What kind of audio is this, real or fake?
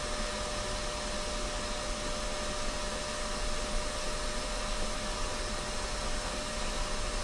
real